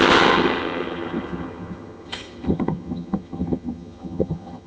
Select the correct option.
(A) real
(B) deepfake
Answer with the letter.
B